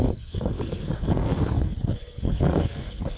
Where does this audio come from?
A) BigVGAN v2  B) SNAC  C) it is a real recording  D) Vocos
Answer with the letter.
B